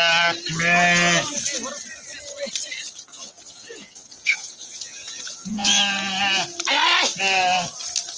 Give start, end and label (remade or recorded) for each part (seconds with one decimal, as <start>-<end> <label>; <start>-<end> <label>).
0.0-3.1 recorded; 3.1-5.8 remade; 5.8-8.2 recorded